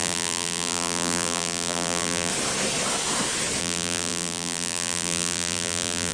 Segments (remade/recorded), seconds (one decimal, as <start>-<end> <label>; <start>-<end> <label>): 0.0-2.3 remade; 2.3-3.6 recorded; 3.6-6.1 remade